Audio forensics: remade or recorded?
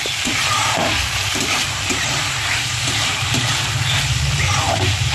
remade